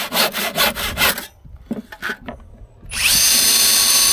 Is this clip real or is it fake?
real